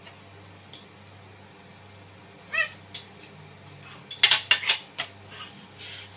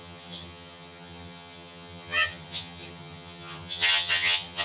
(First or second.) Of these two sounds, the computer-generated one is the second